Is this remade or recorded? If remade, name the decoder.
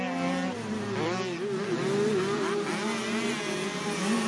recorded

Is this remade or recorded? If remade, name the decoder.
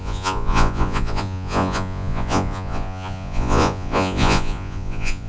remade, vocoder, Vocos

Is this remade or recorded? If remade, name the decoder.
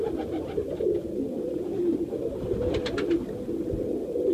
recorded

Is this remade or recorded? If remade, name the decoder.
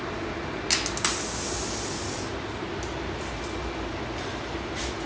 recorded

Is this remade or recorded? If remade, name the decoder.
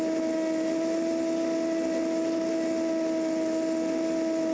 recorded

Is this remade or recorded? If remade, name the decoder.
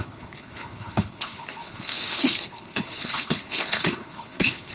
remade, codec, HILCodec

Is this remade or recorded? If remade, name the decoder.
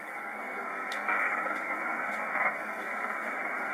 remade, codec, SNAC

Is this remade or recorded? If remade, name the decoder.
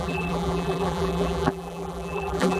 remade, vocoder, BigVGAN v2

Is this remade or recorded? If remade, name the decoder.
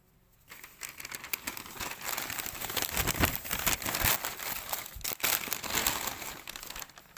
recorded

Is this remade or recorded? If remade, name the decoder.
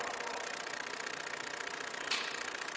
recorded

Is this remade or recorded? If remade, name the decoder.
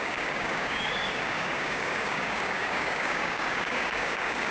remade, codec, DAC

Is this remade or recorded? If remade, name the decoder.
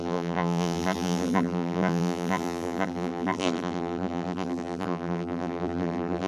remade, vocoder, BigVGAN v2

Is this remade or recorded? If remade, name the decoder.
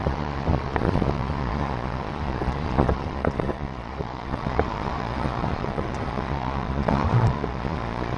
remade, vocoder, Vocos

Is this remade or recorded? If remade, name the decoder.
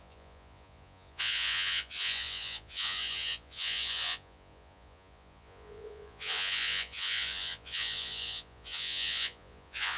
remade, vocoder, Vocos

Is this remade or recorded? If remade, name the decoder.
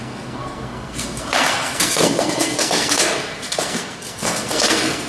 remade, codec, SNAC